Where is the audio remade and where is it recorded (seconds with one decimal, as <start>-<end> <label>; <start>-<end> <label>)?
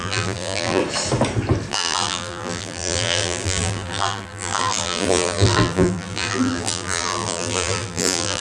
0.0-0.8 remade; 0.8-1.7 recorded; 1.7-8.4 remade